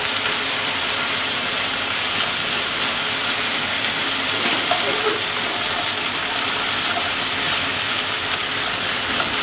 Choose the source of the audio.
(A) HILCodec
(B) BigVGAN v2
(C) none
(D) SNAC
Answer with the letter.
B